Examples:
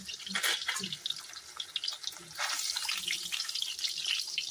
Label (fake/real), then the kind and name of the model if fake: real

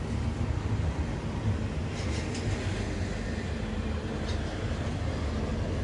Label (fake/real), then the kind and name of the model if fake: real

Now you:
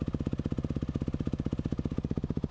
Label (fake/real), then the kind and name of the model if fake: real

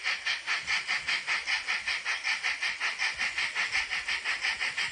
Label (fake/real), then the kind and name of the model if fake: real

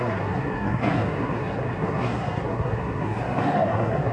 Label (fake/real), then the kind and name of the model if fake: fake, codec, SNAC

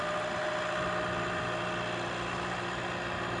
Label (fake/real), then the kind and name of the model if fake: real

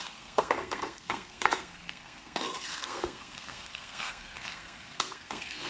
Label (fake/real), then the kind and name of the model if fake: fake, codec, SNAC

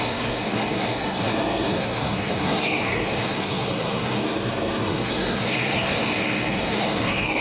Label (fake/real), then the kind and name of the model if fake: fake, codec, SNAC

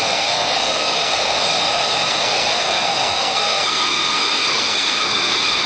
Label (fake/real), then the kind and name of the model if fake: fake, codec, SNAC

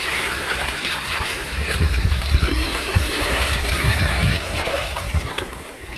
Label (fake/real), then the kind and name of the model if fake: fake, codec, SNAC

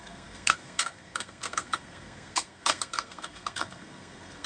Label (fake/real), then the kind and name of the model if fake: fake, codec, SNAC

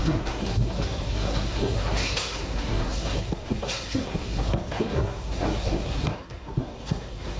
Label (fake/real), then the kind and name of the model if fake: fake, codec, SNAC